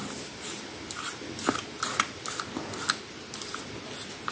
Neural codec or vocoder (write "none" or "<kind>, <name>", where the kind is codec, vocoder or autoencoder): none